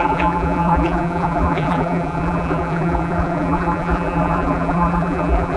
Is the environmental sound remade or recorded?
remade